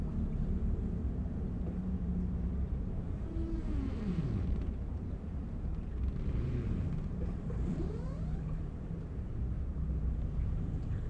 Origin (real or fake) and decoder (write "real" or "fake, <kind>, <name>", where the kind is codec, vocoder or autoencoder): fake, vocoder, BigVGAN v2